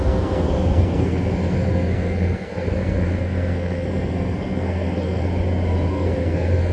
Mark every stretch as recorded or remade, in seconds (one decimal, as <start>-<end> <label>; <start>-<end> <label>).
0.0-5.3 remade; 5.3-5.9 recorded; 5.9-6.7 remade